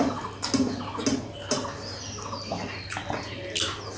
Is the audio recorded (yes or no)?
yes